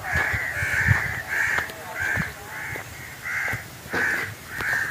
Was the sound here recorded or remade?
recorded